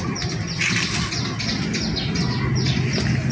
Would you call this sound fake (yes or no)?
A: no